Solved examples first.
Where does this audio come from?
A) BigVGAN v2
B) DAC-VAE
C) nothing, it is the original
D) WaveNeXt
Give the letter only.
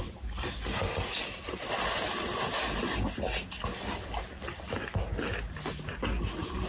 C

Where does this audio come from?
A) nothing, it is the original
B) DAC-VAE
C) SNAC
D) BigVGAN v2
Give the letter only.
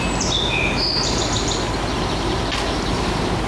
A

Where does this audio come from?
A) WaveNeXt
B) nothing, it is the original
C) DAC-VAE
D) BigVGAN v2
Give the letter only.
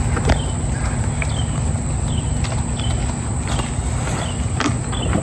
B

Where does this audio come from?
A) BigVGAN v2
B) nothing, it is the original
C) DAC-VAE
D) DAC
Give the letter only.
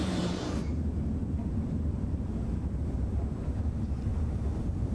A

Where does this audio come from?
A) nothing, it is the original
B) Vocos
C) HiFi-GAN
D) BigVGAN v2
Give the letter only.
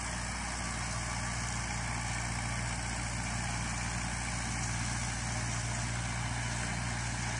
A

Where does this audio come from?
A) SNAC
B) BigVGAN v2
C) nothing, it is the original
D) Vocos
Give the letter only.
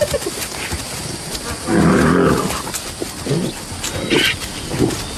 C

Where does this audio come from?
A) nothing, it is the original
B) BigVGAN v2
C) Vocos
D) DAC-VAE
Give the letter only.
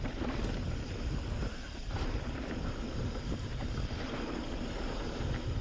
B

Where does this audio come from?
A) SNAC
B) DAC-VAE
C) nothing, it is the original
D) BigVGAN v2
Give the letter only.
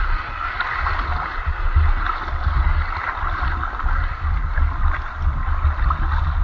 C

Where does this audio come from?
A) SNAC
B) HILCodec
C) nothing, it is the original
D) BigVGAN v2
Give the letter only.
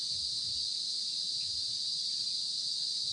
C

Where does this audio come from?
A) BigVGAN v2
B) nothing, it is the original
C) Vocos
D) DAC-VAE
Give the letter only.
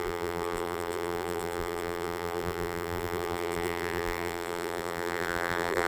A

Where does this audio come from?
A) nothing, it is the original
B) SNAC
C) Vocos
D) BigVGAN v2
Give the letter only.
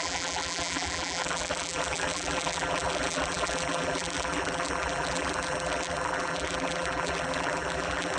D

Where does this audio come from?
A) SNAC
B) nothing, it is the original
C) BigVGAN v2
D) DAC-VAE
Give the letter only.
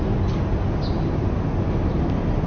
B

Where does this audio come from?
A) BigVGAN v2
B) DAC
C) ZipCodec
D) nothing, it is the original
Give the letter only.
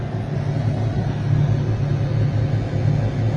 D